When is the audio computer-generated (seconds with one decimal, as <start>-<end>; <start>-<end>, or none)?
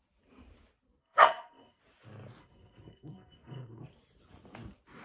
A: 1.0-1.8; 2.4-3.8